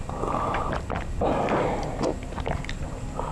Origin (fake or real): real